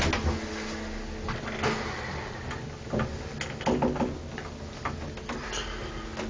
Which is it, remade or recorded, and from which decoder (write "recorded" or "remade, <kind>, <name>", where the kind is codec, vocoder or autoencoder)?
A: recorded